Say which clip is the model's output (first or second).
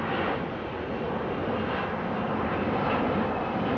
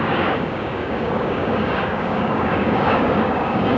second